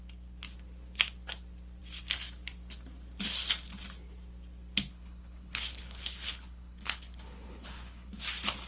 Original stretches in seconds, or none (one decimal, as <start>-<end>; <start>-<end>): 0.0-4.9; 8.1-8.7